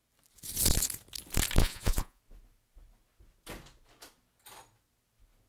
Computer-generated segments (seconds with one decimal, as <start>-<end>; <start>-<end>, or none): 1.6-2.2